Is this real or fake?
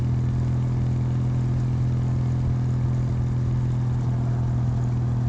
real